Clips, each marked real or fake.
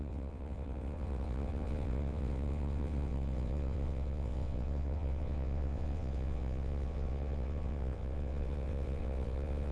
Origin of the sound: fake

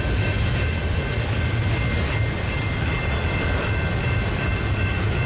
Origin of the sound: real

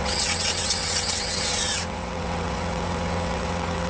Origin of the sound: fake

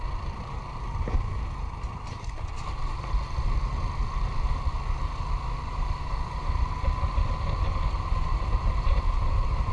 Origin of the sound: real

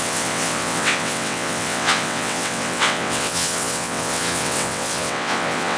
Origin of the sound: fake